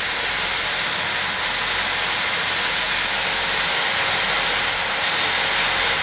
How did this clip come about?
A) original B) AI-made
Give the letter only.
A